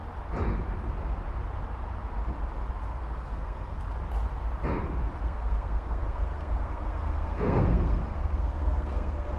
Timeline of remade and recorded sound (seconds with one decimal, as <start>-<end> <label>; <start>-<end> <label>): 0.0-2.8 recorded; 2.8-3.8 remade; 3.8-5.2 recorded; 5.2-9.4 remade